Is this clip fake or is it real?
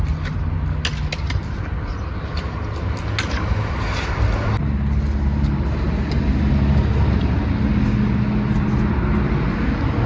real